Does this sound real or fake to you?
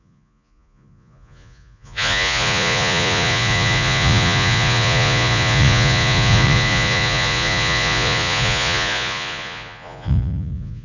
fake